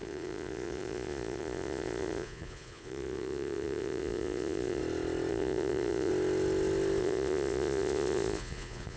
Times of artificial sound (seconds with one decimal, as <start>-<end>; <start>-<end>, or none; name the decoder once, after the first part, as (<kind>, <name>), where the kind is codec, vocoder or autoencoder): 0.0-4.8 (vocoder, Vocos); 5.3-6.1; 7.0-9.0